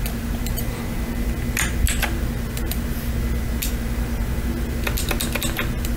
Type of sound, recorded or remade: recorded